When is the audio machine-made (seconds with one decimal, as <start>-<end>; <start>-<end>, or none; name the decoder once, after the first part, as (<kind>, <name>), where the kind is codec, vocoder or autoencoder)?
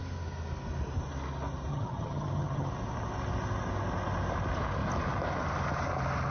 1.7-2.7 (vocoder, HiFi-GAN)